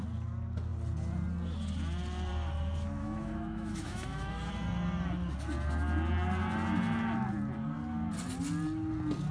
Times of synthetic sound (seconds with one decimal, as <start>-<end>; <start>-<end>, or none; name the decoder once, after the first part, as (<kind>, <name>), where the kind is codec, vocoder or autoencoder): 3.0-4.5 (autoencoder, DAC-VAE)